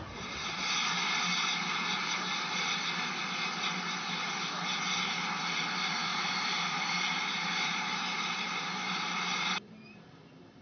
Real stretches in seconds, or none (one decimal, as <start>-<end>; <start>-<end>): 0.0-6.1; 10.2-10.6